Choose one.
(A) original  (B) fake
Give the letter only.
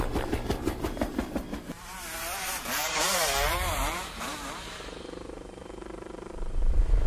B